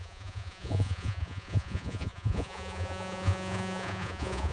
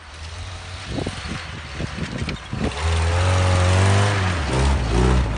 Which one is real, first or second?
second